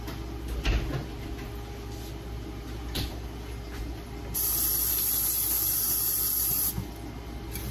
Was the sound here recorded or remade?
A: recorded